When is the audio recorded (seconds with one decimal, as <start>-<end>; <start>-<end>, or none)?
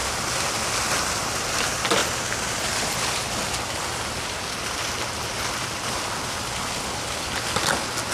0.0-8.1